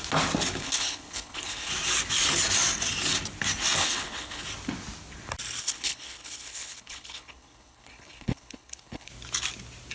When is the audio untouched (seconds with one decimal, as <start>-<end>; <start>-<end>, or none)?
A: 0.0-0.6; 1.7-3.8; 4.4-5.6; 9.1-9.9